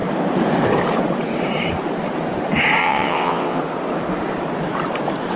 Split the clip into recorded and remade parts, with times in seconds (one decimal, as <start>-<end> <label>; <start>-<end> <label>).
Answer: 0.0-2.8 recorded; 2.8-3.6 remade; 3.6-5.4 recorded